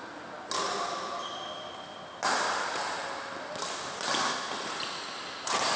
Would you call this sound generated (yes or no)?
no